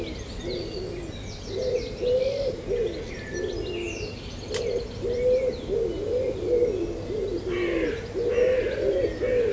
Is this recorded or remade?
recorded